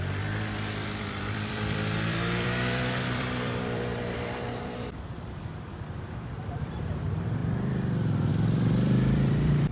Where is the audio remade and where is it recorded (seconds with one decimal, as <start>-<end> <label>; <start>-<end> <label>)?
0.0-9.7 remade